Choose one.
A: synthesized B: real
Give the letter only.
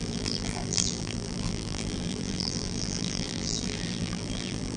A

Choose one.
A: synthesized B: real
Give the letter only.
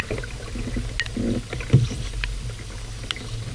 B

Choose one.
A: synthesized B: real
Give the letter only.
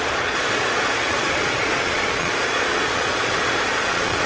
A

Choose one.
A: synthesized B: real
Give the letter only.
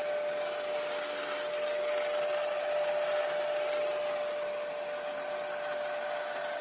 B